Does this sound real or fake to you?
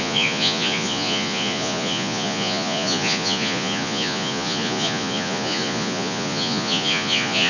fake